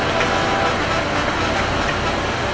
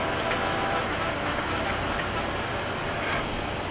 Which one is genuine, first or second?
first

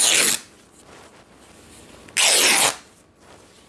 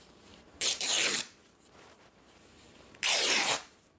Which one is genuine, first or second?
first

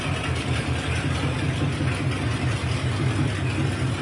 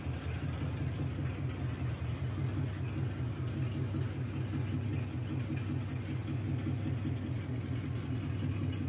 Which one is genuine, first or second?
second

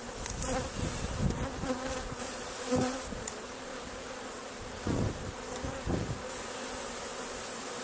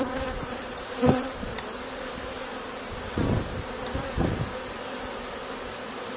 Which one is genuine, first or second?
first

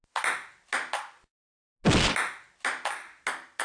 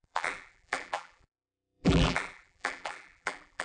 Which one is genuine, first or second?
first